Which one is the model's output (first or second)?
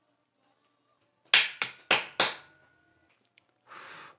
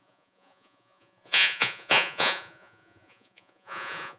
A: second